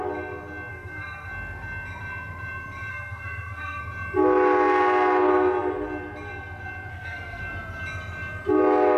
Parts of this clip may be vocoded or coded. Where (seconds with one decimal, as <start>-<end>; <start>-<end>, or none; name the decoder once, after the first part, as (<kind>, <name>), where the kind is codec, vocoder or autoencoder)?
0.7-1.3 (codec, SNAC); 2.9-3.8; 6.9-7.4